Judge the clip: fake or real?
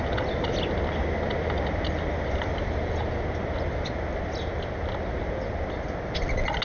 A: real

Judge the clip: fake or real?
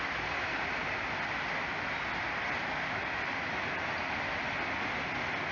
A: real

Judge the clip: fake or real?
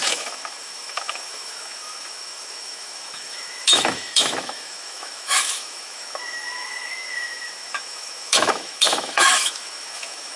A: fake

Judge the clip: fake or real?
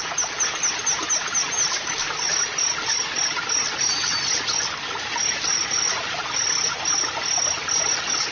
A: real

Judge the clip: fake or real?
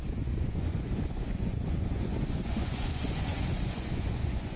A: fake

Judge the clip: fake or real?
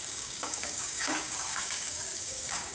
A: fake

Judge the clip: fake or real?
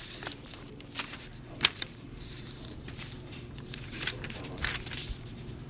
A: fake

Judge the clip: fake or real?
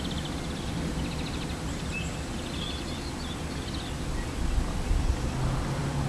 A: real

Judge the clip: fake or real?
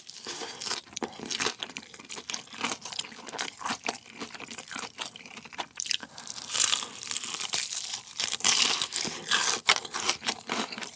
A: fake